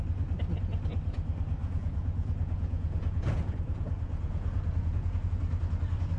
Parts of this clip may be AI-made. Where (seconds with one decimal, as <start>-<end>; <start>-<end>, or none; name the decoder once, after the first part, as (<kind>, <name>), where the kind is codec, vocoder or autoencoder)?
1.6-5.3 (vocoder, Vocos)